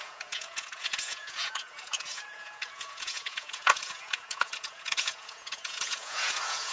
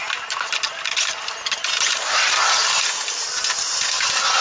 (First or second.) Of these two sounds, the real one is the second